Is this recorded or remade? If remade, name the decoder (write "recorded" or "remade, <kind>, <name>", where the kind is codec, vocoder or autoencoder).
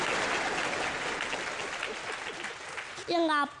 recorded